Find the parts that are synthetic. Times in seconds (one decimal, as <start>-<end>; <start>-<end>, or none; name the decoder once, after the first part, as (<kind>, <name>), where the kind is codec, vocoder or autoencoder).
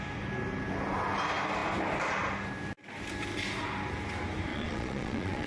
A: 4.5-5.5 (vocoder, Vocos)